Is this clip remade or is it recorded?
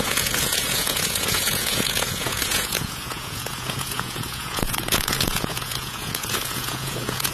remade